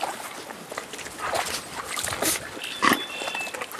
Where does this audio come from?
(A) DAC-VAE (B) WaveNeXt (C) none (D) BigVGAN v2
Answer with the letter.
C